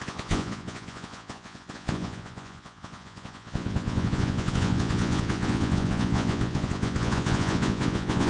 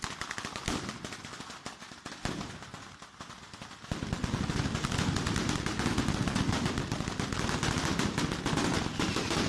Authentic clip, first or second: second